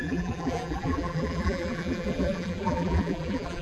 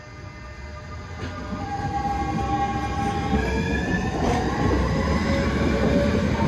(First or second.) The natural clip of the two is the second